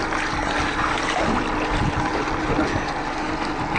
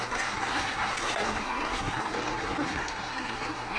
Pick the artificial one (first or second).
second